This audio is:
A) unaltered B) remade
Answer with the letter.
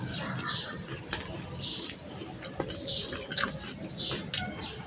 A